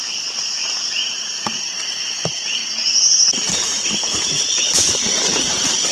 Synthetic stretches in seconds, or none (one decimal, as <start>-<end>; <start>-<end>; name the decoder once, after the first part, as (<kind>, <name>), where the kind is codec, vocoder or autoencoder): 0.0-0.7 (vocoder, BigVGAN v2); 1.8-2.6; 3.6-5.9